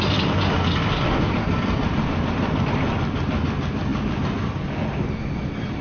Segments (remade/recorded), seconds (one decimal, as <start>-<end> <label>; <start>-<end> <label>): 0.0-5.8 recorded